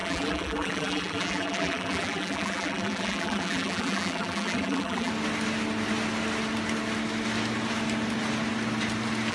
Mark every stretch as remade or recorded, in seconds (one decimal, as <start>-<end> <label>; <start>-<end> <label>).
0.0-5.1 remade; 5.1-9.3 recorded